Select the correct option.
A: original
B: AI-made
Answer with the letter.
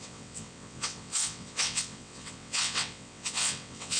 B